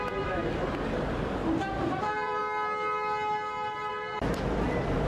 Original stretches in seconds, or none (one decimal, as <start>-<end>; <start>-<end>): 0.4-0.9; 1.4-1.9; 2.4-3.9